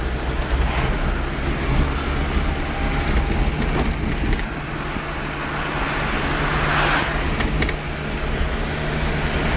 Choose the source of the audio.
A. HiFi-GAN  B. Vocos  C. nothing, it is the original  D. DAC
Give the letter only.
C